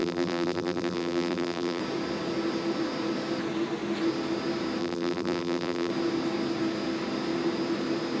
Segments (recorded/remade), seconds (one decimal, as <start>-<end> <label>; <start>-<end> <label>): 0.0-1.8 remade; 1.8-4.8 recorded; 4.8-5.9 remade; 5.9-8.2 recorded